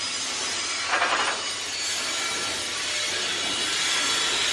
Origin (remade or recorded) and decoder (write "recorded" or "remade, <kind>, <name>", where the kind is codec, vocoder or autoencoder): recorded